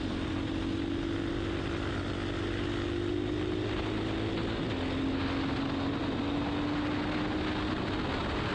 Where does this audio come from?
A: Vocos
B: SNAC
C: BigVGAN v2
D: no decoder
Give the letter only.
D